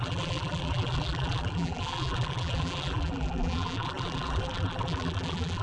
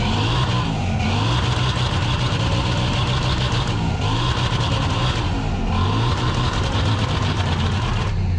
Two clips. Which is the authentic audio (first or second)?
second